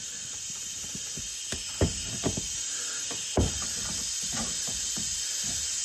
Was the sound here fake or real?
real